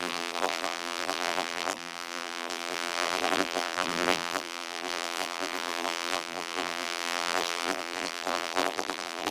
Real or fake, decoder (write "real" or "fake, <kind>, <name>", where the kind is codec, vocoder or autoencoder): fake, vocoder, BigVGAN v2